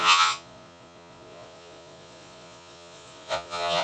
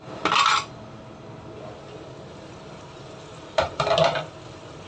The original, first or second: second